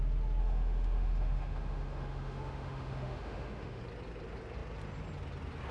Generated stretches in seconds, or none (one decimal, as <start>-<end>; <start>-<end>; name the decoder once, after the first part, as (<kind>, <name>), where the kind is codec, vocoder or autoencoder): 0.4-3.8 (autoencoder, DAC-VAE)